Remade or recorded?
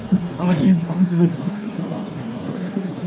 remade